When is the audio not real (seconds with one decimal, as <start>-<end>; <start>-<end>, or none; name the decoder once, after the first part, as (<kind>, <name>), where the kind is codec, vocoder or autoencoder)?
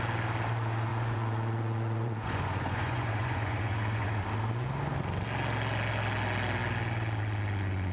0.9-4.2 (vocoder, Vocos)